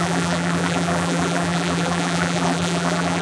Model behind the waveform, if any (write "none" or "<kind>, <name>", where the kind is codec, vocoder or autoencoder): vocoder, BigVGAN v2